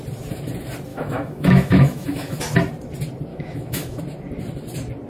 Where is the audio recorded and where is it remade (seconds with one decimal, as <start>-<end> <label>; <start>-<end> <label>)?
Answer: 0.0-0.9 recorded; 0.9-2.4 remade; 2.4-3.3 recorded; 3.3-4.0 remade; 4.0-5.1 recorded